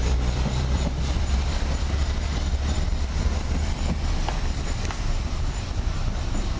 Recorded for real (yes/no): no